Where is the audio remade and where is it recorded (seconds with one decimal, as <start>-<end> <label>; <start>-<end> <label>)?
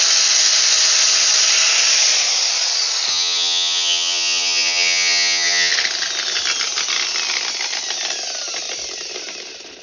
0.0-3.1 recorded; 3.1-5.7 remade; 5.7-9.8 recorded